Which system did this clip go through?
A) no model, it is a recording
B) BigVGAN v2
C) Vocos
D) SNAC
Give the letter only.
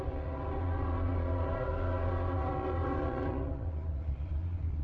C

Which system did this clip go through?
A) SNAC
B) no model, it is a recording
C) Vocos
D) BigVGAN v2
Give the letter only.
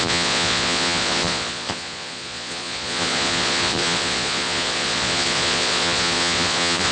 C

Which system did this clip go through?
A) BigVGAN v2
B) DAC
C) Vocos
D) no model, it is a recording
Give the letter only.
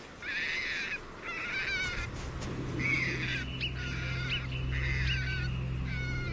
D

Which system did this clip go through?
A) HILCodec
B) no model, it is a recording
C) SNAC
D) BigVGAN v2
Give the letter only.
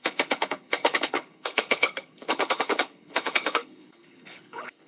A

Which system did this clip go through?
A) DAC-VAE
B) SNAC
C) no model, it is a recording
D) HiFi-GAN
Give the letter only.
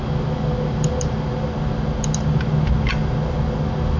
C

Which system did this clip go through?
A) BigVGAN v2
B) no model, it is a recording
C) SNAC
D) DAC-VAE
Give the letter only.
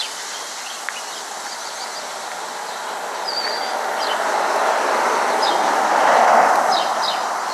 B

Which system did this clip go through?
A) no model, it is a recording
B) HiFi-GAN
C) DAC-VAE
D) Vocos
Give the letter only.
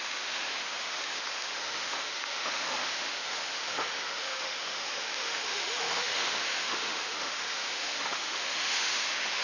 C